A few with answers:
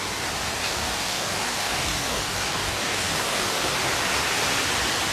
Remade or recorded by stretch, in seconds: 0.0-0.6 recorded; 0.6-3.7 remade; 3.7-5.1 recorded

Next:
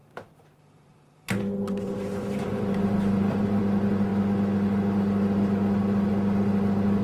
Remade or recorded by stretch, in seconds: 0.0-3.6 remade; 3.6-7.0 recorded